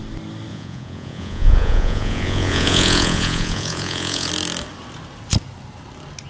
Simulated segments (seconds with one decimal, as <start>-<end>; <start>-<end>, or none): 0.5-4.3